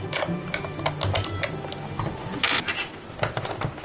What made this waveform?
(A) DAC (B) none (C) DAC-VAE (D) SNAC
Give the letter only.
B